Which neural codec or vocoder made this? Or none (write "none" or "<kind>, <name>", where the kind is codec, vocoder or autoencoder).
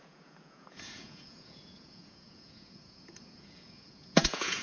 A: vocoder, Vocos